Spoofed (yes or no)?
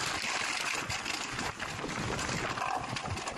no